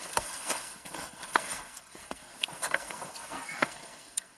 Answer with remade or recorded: remade